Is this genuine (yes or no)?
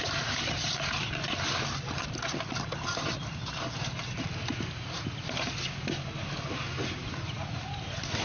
yes